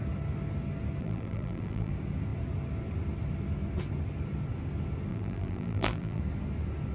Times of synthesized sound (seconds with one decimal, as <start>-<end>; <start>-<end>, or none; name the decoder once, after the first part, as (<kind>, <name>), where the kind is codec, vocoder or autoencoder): 1.0-1.9 (vocoder, BigVGAN v2); 5.1-6.2